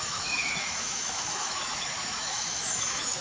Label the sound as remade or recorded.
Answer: remade